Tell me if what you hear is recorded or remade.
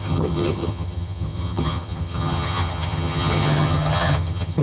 remade